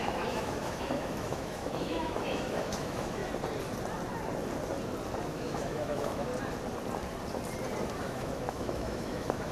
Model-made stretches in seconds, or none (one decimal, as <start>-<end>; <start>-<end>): 0.0-3.2; 5.2-6.3; 8.0-9.5